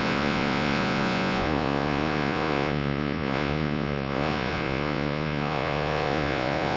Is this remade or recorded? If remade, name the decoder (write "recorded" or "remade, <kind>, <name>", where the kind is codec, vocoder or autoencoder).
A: remade, vocoder, Vocos